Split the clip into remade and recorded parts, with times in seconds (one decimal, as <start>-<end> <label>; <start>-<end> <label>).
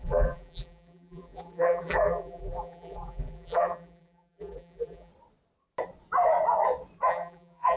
0.0-5.1 remade; 5.1-7.1 recorded; 7.1-7.8 remade